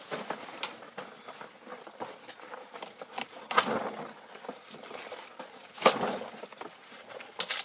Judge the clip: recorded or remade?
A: recorded